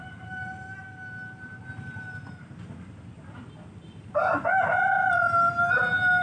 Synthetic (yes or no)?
no